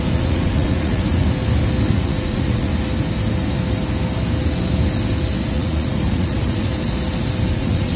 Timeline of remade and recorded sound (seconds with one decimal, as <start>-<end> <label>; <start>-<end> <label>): 0.0-1.2 remade; 1.2-1.9 recorded; 1.9-2.7 remade; 2.7-5.5 recorded; 5.5-6.7 remade; 6.7-7.5 recorded; 7.5-8.0 remade